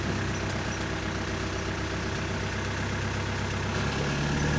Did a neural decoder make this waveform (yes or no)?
no